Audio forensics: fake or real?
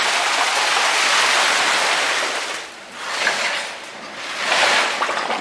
real